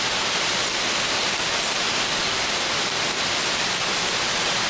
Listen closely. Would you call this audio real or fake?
real